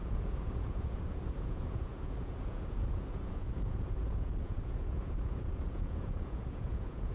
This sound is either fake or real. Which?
fake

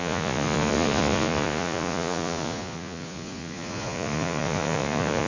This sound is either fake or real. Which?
fake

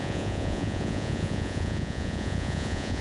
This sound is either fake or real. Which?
fake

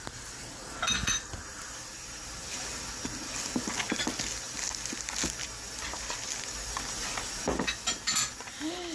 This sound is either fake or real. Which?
real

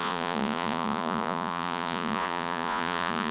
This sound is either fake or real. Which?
fake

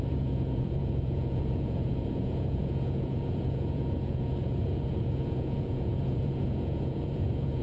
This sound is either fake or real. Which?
fake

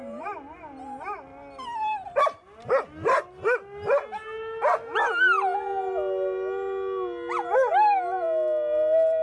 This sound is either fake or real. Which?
real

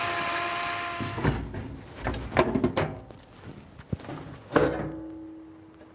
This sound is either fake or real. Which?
real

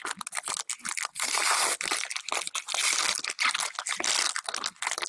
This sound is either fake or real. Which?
real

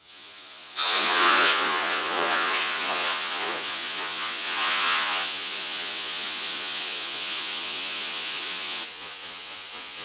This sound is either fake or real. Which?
fake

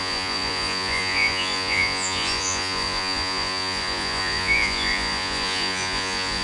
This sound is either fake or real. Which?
fake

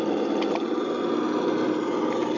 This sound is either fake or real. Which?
real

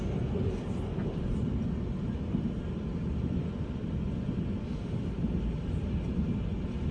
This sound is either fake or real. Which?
real